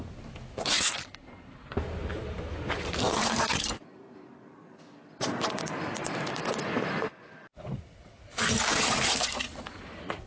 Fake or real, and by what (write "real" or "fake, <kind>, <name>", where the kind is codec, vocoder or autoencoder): real